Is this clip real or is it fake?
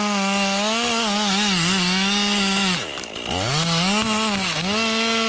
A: real